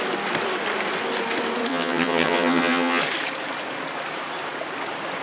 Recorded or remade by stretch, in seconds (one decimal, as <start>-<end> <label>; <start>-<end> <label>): 0.0-1.7 recorded; 1.7-3.0 remade; 3.0-5.2 recorded